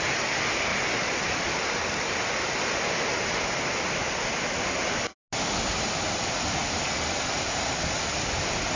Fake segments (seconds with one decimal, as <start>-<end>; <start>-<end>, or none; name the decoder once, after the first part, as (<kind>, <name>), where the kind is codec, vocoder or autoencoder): 0.7-2.4 (vocoder, BigVGAN v2); 6.6-7.4